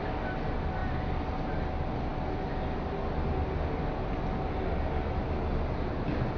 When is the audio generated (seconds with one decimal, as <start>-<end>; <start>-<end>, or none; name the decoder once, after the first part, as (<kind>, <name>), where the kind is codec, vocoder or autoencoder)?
none